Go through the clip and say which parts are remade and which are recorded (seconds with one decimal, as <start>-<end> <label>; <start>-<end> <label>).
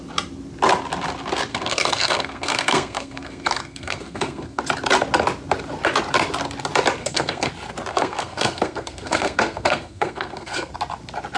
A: 0.0-1.5 recorded; 1.5-4.6 remade; 4.6-7.0 recorded; 7.0-7.5 remade; 7.5-7.9 recorded; 7.9-10.7 remade; 10.7-11.4 recorded